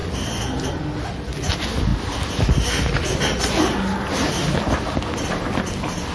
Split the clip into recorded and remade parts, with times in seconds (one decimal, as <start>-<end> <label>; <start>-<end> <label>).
0.0-6.1 recorded